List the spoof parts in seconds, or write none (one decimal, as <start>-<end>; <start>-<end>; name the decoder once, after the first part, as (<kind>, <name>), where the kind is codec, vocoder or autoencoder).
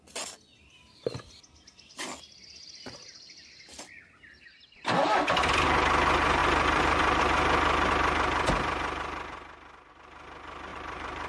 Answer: 6.4-7.2 (vocoder, BigVGAN v2); 10.7-11.3